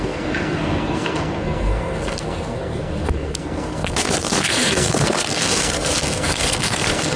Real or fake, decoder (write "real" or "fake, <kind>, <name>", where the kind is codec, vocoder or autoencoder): fake, codec, SNAC